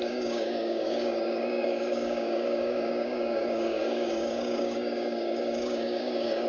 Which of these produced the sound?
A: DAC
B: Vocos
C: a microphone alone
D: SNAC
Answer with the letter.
A